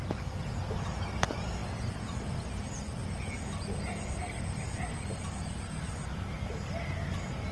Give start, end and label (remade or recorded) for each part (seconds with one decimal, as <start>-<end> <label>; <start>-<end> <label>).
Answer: 0.0-7.5 recorded